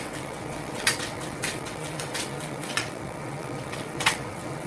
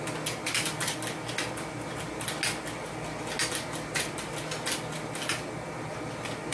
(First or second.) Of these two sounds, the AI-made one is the first